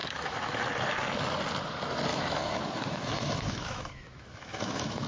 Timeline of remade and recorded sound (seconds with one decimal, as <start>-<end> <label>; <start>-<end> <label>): 0.0-0.6 remade; 0.6-2.1 recorded; 2.1-5.1 remade